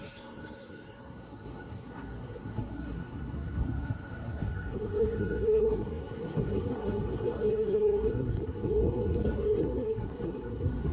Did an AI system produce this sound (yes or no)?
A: yes